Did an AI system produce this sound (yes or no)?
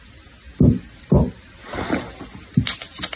no